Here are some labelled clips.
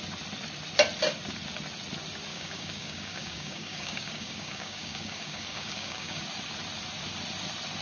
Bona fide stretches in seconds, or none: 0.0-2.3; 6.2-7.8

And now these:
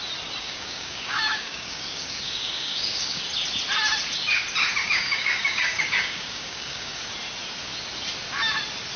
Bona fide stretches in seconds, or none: 0.0-0.4; 3.2-4.8; 7.0-9.0

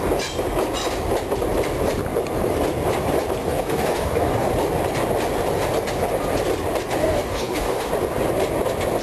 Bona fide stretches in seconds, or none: 0.0-3.4; 4.5-7.0; 7.9-9.0

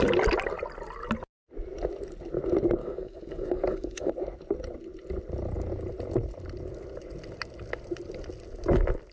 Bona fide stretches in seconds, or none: 0.0-2.8; 4.1-9.1